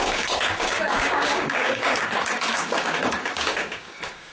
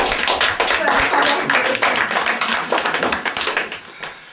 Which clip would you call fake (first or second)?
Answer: first